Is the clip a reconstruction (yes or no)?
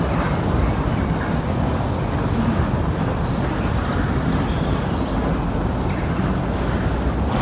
no